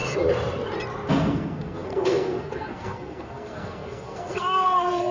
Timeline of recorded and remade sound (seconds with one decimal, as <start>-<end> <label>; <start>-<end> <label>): 0.0-1.1 recorded; 1.1-5.1 remade